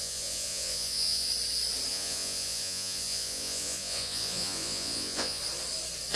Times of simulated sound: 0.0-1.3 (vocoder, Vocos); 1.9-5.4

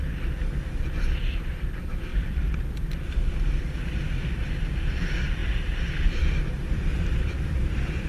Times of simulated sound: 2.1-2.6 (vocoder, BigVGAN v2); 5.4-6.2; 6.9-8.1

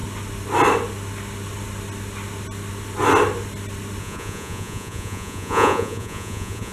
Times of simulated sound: 4.0-6.7 (vocoder, Vocos)

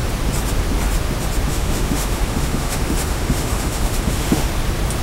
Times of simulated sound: 1.5-4.5 (autoencoder, DAC-VAE)

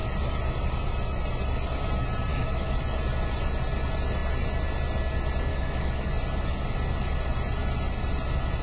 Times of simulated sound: 2.3-2.8 (autoencoder, DAC-VAE); 5.5-6.1

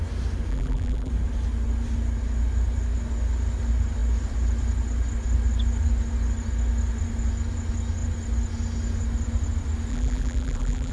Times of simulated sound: 0.5-1.1 (vocoder, BigVGAN v2); 9.9-10.9